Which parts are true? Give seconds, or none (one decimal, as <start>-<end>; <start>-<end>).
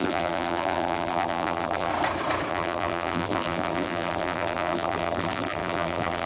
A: 1.9-2.5